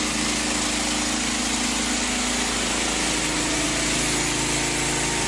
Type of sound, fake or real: real